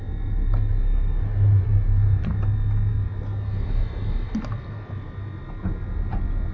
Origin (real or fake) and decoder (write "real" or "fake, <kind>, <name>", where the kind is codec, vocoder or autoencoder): real